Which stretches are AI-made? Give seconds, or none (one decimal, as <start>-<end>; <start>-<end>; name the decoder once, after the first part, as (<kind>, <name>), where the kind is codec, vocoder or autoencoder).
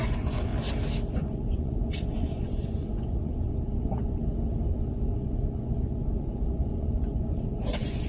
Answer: 0.0-0.5 (vocoder, Vocos); 1.1-4.2; 4.7-8.1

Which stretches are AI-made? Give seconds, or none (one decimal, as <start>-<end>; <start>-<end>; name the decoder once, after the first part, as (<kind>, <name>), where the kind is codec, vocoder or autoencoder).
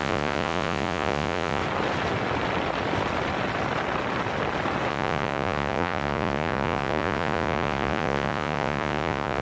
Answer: 0.0-1.6 (vocoder, Vocos); 4.9-9.4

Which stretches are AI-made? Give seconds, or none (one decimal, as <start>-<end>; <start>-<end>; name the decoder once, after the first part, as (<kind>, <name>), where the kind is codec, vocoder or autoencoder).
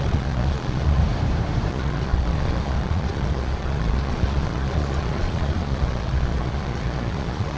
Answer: 0.0-1.0 (vocoder, Vocos); 1.7-7.6